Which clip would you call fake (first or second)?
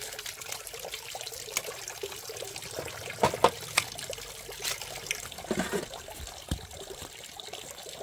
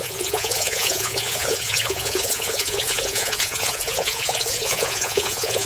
second